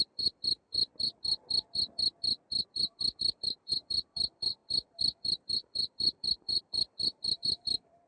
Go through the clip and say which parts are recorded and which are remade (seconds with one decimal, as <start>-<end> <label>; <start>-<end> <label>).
0.0-0.9 remade; 0.9-2.7 recorded; 2.7-8.1 remade